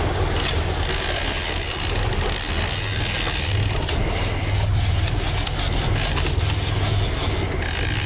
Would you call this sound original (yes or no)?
yes